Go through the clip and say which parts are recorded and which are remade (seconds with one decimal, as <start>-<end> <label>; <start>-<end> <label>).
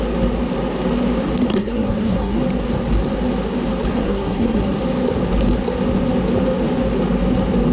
0.0-1.5 recorded; 1.5-2.4 remade; 2.4-3.9 recorded; 3.9-4.8 remade; 4.8-7.7 recorded